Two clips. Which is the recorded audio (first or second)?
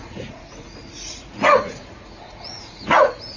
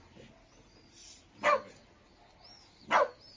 second